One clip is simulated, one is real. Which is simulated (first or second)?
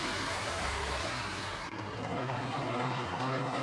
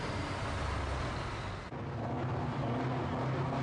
first